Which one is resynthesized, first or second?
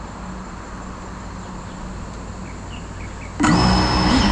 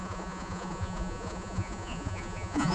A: second